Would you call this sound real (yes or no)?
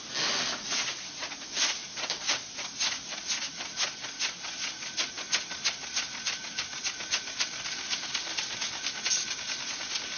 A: yes